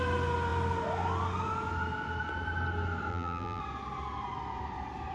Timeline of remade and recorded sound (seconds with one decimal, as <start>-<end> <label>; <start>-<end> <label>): 0.0-3.1 recorded; 3.1-3.6 remade; 3.6-5.1 recorded